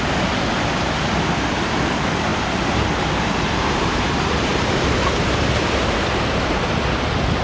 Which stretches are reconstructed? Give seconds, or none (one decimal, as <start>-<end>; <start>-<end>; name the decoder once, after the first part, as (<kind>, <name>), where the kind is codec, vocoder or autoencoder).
2.3-6.4 (vocoder, BigVGAN v2)